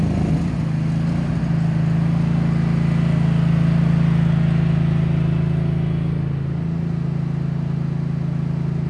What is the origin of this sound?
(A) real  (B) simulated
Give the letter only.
A